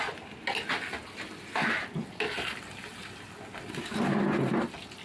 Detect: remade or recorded recorded